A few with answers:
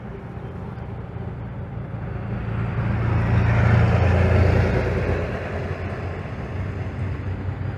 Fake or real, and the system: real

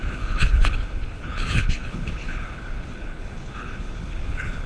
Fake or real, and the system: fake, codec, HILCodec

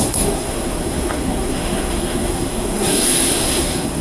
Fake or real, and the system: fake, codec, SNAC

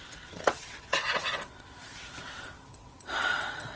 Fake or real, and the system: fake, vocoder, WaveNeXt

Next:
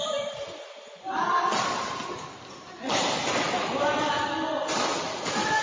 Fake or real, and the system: real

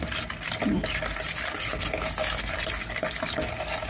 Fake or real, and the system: real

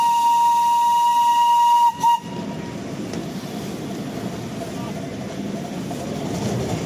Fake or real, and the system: real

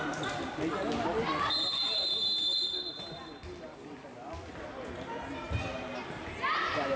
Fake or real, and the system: real